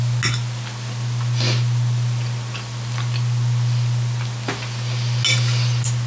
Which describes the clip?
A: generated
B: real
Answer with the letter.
B